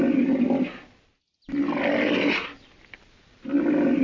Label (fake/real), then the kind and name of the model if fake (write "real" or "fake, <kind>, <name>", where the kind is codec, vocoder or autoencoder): real